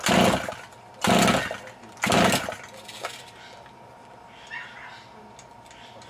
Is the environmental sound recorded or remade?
recorded